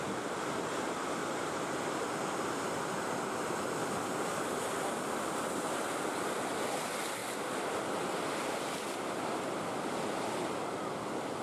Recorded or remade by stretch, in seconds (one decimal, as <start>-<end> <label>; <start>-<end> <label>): 0.0-11.4 recorded